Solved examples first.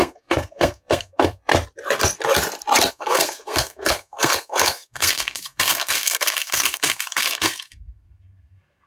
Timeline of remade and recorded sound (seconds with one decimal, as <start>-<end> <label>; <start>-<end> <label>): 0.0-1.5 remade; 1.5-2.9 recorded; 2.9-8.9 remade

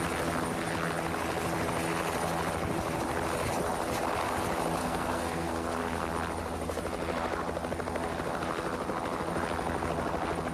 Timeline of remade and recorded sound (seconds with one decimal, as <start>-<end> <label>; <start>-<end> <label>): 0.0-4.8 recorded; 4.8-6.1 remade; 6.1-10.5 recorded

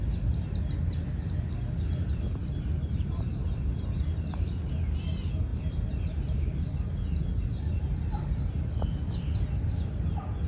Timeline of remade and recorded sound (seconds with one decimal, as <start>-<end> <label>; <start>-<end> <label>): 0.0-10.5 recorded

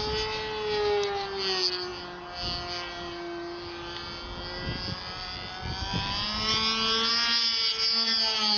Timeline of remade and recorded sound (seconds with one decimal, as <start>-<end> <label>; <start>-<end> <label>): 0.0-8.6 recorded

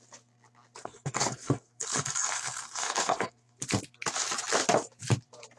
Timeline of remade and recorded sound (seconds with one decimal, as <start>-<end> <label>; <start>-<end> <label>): 0.0-0.8 recorded; 0.8-3.6 remade; 3.6-5.6 recorded

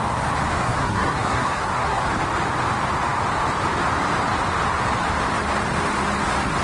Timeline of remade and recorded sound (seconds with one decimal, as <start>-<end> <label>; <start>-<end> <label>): 0.0-0.6 recorded; 0.6-2.0 remade; 2.0-6.6 recorded

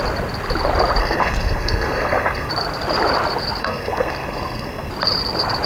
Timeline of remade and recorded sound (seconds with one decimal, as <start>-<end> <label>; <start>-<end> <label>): 0.0-1.0 recorded; 1.0-2.5 remade; 2.5-3.6 recorded; 3.6-4.9 remade; 4.9-5.7 recorded